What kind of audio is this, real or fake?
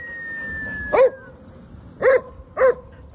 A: real